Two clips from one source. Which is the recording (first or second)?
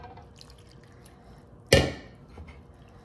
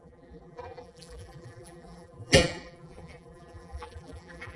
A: first